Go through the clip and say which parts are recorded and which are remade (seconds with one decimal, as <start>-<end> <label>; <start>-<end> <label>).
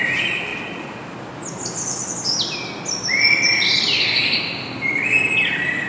0.0-0.5 remade; 0.5-1.5 recorded; 1.5-2.0 remade; 2.0-5.5 recorded; 5.5-5.9 remade